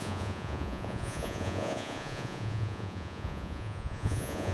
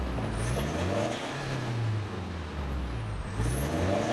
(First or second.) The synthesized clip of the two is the first